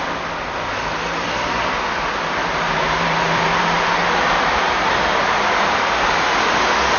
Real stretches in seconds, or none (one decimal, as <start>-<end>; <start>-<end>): 0.0-2.4; 5.8-7.0

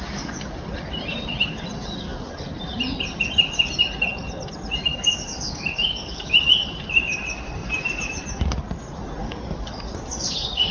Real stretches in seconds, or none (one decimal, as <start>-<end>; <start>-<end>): 0.0-4.9; 6.3-9.2